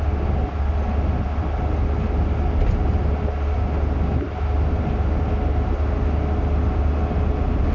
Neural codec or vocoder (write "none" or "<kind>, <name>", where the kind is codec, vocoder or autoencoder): none